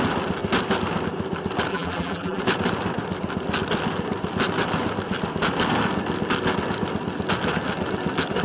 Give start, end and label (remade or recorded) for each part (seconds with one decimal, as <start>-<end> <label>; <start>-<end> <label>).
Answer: 0.0-1.7 recorded; 1.7-2.4 remade; 2.4-8.4 recorded